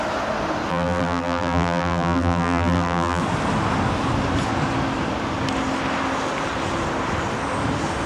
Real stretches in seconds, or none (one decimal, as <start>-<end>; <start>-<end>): 0.0-0.7; 3.2-8.1